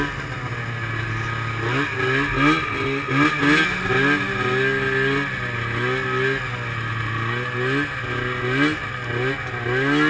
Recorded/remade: recorded